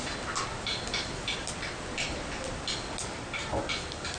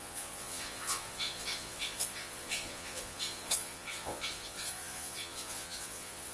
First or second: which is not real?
second